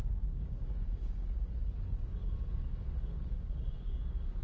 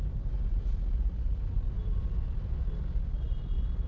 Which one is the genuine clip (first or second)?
second